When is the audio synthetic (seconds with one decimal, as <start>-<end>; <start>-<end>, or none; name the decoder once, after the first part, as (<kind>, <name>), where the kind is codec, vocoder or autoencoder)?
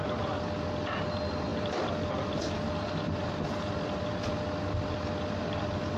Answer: 1.5-2.5 (vocoder, BigVGAN v2)